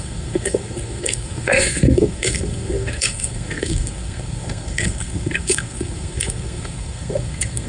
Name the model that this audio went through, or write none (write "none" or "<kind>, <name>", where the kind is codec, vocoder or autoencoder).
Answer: codec, SNAC